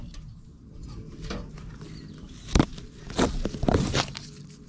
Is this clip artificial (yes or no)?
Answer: no